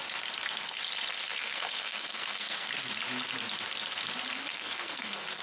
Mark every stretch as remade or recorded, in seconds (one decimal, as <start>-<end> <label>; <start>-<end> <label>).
0.0-1.2 recorded; 1.2-2.7 remade; 2.7-4.5 recorded; 4.5-5.4 remade